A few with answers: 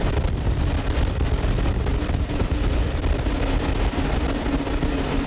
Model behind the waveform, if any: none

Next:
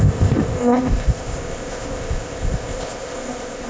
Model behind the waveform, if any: codec, ZipCodec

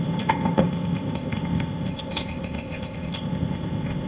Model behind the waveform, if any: codec, ZipCodec